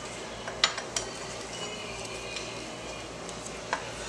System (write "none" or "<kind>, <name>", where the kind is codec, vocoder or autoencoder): none